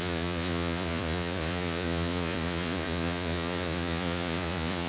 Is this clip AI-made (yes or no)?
yes